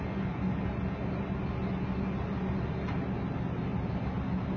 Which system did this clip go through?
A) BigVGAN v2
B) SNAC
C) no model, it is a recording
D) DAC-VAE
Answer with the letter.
C